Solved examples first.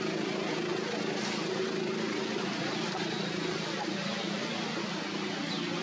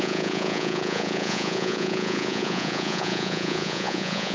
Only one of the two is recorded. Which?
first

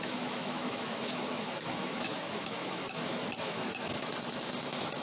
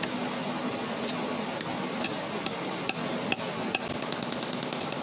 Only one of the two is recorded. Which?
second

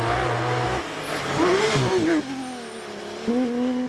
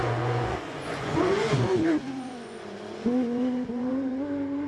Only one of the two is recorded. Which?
first